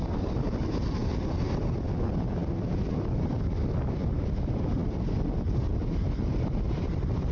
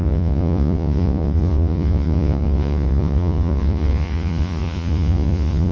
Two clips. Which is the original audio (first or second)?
first